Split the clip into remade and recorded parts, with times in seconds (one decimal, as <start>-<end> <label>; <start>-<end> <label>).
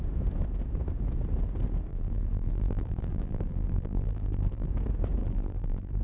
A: 0.0-1.9 recorded; 1.9-4.7 remade; 4.7-5.2 recorded; 5.2-6.0 remade